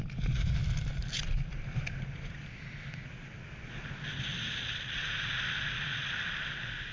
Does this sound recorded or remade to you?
recorded